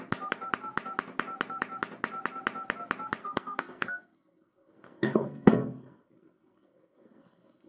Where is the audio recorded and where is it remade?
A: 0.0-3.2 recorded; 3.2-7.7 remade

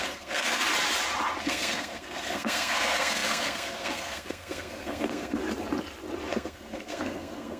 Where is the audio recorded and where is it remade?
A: 0.0-0.6 remade; 0.6-1.4 recorded; 1.4-5.4 remade; 5.4-6.3 recorded; 6.3-7.6 remade

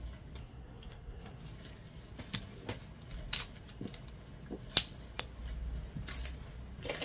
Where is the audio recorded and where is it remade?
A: 0.0-0.4 recorded; 0.4-1.4 remade; 1.4-7.0 recorded

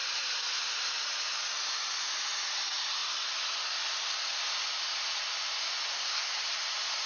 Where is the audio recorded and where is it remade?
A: 0.0-5.9 recorded; 5.9-6.4 remade; 6.4-7.1 recorded

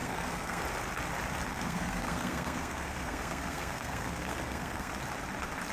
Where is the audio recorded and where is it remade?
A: 0.0-0.6 remade; 0.6-1.5 recorded; 1.5-4.9 remade; 4.9-5.7 recorded